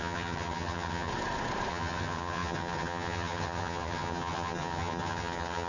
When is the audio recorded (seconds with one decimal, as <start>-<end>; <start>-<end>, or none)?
1.1-1.7